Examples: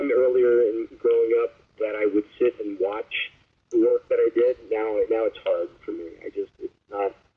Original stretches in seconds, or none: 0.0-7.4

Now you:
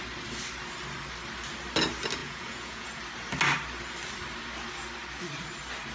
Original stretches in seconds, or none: 0.0-2.2; 3.0-5.9